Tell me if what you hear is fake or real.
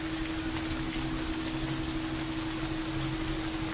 real